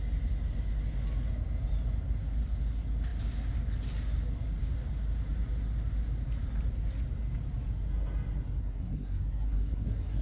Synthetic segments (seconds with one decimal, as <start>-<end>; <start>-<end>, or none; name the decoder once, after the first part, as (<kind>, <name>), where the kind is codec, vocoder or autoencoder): 8.6-10.2 (codec, SNAC)